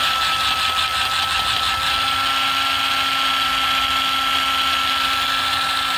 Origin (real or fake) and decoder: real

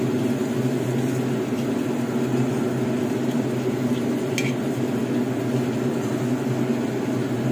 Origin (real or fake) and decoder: real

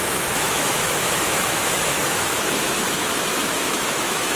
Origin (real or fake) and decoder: fake, autoencoder, DAC-VAE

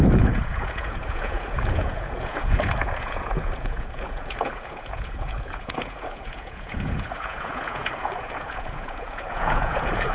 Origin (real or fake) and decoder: fake, vocoder, Vocos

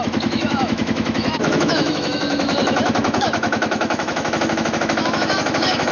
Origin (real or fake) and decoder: fake, autoencoder, DAC-VAE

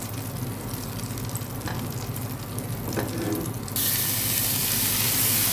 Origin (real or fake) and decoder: real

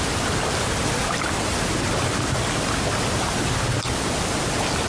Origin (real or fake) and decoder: real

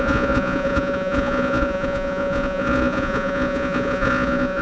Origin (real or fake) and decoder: fake, vocoder, Vocos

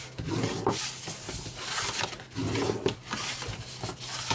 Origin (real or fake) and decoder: real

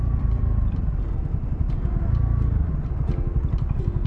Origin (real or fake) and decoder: real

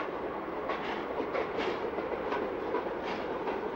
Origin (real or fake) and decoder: real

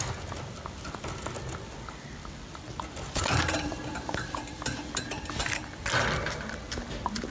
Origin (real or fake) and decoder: real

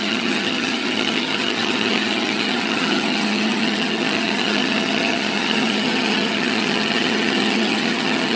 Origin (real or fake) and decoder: fake, vocoder, HiFi-GAN